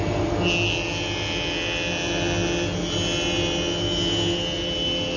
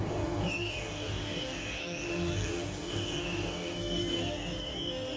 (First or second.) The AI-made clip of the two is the second